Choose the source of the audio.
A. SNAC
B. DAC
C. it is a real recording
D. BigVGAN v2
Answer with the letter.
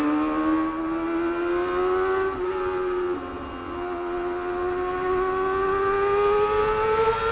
C